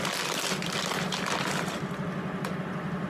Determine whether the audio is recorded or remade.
recorded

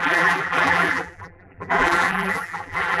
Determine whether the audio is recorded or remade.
remade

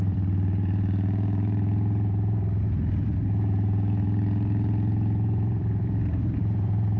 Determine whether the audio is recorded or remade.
remade